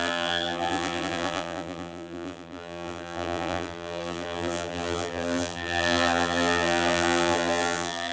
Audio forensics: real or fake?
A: fake